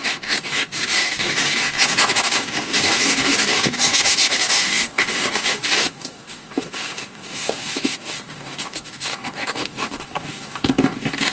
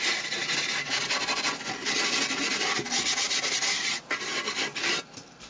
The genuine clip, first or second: second